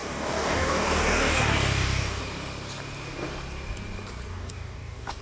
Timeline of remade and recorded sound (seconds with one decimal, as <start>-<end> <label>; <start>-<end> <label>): 0.0-2.2 remade; 2.2-4.3 recorded; 4.3-5.2 remade